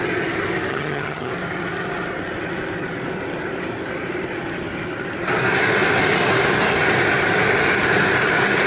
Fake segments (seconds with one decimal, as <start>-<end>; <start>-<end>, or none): 0.7-1.3